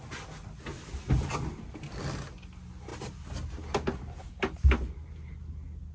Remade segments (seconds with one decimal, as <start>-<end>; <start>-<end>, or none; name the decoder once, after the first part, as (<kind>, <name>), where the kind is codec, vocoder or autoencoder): 0.7-2.0 (vocoder, BigVGAN v2)